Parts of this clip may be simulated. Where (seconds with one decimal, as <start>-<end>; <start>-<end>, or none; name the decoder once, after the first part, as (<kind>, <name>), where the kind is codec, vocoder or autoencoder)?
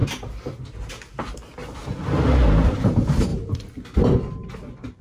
none